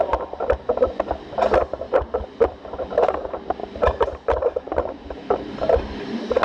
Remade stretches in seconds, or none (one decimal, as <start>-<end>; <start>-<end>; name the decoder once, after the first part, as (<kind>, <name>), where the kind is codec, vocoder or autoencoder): 3.6-5.5 (vocoder, BigVGAN v2)